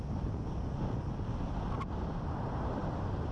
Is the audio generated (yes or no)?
no